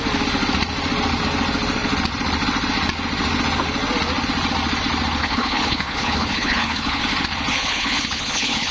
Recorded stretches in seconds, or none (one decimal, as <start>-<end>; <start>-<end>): 0.0-5.2; 7.0-7.5